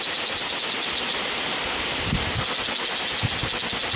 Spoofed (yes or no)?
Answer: no